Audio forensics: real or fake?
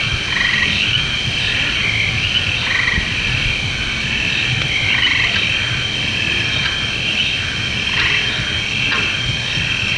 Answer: real